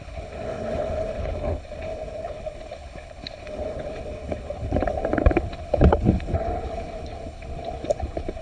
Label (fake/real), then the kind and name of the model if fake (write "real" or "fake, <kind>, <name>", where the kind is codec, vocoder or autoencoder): fake, codec, HILCodec